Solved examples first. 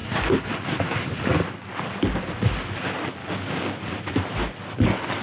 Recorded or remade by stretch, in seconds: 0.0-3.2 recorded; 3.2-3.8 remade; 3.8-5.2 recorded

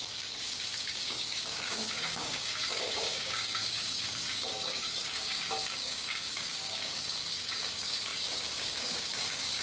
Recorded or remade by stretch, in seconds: 0.0-9.6 remade

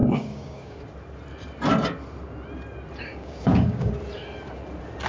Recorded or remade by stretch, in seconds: 0.0-0.8 remade; 0.8-3.1 recorded; 3.1-3.9 remade; 3.9-5.1 recorded

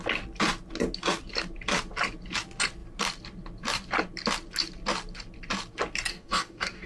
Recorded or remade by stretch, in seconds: 0.0-6.1 recorded; 6.1-6.9 remade

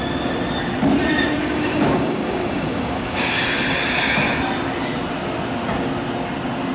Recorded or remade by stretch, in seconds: 0.0-1.4 recorded; 1.4-3.4 remade; 3.4-6.7 recorded

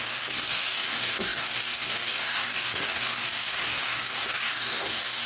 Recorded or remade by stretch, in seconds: 0.0-5.3 remade

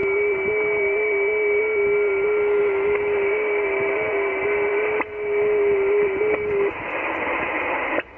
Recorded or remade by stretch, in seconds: 0.0-8.2 recorded

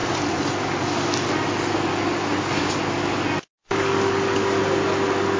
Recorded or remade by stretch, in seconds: 0.0-1.9 recorded; 1.9-2.7 remade; 2.7-3.6 recorded; 3.6-4.6 remade; 4.6-5.4 recorded